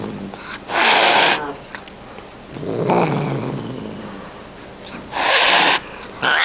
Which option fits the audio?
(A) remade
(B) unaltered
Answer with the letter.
B